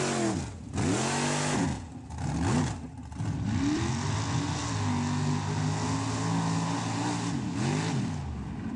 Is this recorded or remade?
recorded